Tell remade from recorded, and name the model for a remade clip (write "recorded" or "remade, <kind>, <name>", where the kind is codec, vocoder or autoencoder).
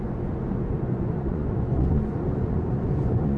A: remade, vocoder, Vocos